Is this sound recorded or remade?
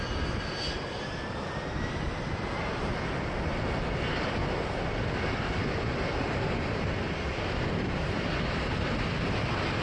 recorded